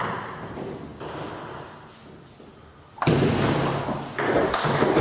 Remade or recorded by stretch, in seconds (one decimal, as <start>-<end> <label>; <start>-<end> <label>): 0.0-5.0 recorded